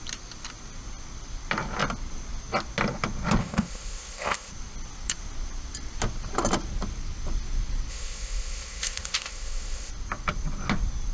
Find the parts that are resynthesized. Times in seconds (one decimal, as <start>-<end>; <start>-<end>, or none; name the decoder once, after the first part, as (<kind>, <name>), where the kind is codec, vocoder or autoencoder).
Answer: 3.4-4.5 (codec, ZipCodec); 7.9-9.9